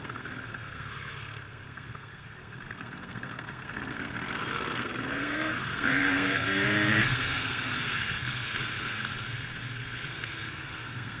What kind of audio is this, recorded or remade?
remade